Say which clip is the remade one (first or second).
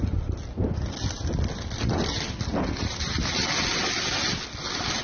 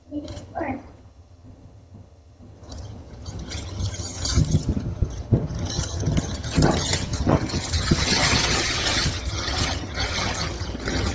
second